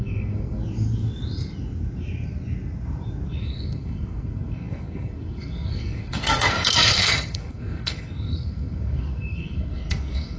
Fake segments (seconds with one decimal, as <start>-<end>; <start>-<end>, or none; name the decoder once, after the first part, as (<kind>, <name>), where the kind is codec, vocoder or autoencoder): 0.0-0.6 (codec, SNAC); 3.3-10.4